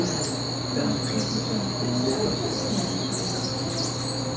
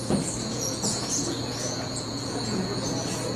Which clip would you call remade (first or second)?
second